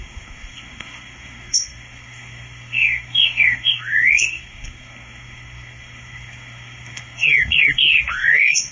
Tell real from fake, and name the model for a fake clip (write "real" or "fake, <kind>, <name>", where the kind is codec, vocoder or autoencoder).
fake, codec, SNAC